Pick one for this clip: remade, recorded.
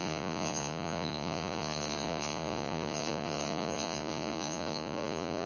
remade